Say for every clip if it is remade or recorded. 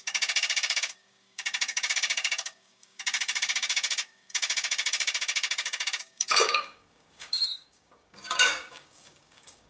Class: remade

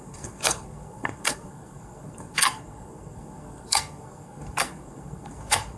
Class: remade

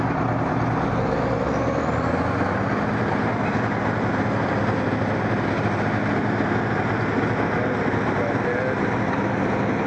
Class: recorded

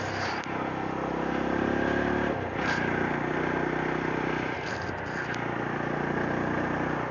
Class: recorded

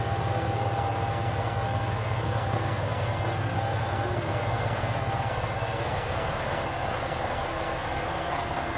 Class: remade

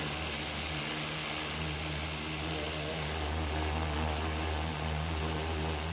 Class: recorded